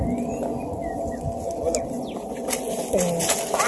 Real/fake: real